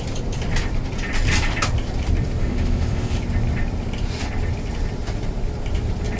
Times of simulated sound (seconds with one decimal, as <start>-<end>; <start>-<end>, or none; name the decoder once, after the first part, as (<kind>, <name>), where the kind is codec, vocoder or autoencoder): 2.4-3.2 (autoencoder, DAC-VAE)